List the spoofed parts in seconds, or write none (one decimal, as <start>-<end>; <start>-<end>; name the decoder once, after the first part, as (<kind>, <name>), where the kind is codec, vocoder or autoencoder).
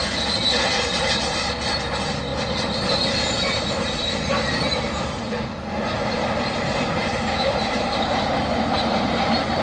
2.3-4.3 (vocoder, BigVGAN v2); 7.0-9.6